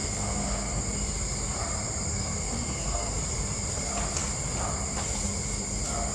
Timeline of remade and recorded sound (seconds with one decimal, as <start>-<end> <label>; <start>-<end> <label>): 0.0-0.8 remade; 0.8-2.1 recorded; 2.1-3.1 remade; 3.1-6.1 recorded